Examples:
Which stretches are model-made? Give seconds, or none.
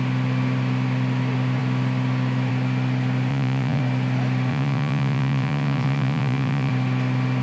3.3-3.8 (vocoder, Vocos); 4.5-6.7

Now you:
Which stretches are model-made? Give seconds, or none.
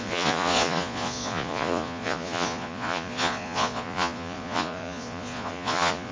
0.0-6.1 (vocoder, Vocos)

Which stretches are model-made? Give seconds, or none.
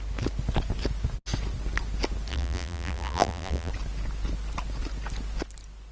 2.3-3.7 (vocoder, BigVGAN v2)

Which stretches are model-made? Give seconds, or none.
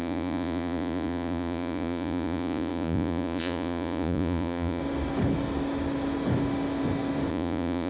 0.0-4.8 (vocoder, Vocos); 7.3-7.9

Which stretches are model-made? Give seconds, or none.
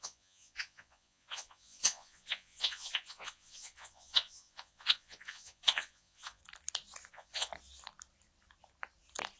0.0-6.4 (vocoder, Vocos); 7.1-7.5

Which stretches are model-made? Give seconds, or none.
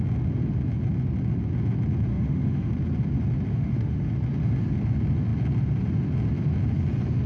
2.1-2.7 (autoencoder, DAC-VAE); 3.5-4.1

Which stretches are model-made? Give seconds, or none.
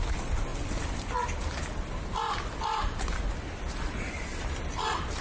0.0-0.5 (vocoder, BigVGAN v2); 3.6-5.2